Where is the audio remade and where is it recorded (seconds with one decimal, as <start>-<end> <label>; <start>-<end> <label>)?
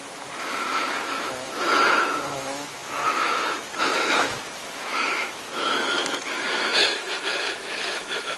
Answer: 0.0-8.4 remade